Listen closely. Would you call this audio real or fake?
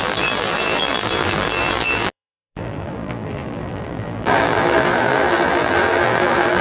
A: fake